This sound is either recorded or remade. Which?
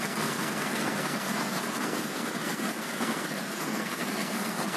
remade